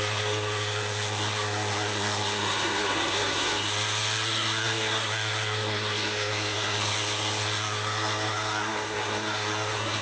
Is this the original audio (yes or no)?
no